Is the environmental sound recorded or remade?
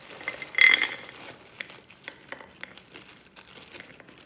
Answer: recorded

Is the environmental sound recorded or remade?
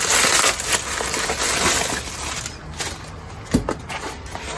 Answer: recorded